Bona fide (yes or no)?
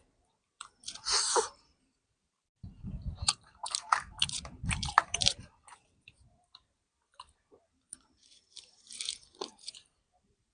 no